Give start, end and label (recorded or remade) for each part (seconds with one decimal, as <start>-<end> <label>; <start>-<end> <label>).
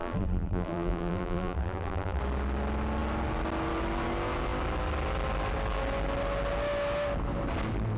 0.0-2.2 remade; 2.2-8.0 recorded